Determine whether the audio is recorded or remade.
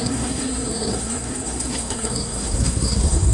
remade